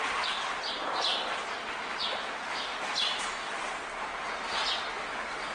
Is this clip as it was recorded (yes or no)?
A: yes